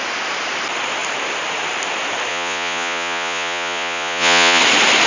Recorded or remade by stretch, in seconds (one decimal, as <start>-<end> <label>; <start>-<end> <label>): 0.0-2.3 recorded; 2.3-4.6 remade; 4.6-5.1 recorded